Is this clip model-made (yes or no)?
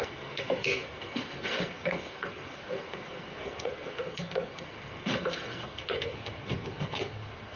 yes